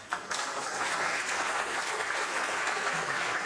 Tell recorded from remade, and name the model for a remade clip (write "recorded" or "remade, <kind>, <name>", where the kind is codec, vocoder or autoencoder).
remade, codec, SNAC